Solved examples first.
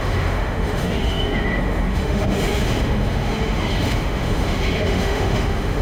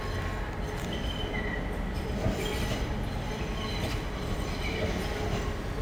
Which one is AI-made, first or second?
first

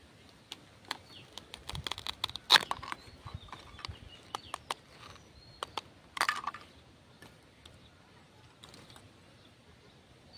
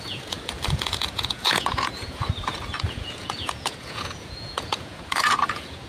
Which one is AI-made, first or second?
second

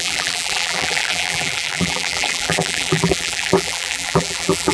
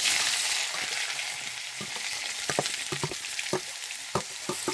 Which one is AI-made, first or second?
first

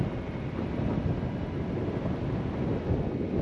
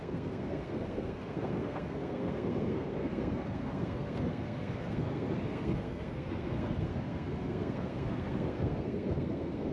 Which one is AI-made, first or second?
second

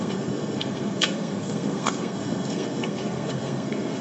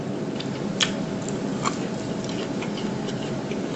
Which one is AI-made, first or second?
first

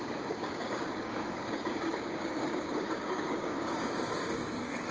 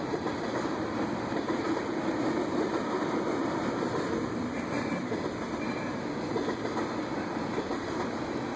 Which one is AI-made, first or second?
first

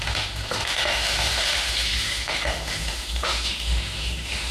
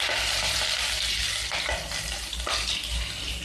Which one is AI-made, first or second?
first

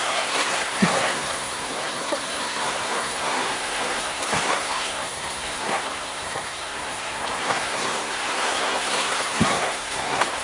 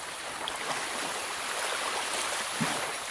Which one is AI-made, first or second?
first